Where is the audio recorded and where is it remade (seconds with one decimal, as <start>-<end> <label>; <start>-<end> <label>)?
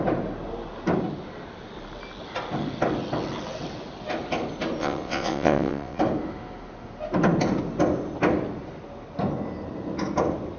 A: 0.0-4.8 recorded; 4.8-6.0 remade; 6.0-10.6 recorded